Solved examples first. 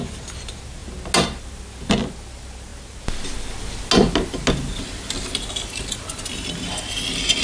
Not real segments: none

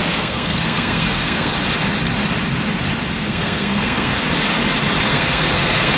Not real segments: 0.0-1.5 (codec, SNAC); 3.1-4.1; 5.1-6.0

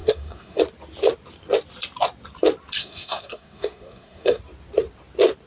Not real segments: 0.0-0.6 (codec, SNAC); 2.8-4.4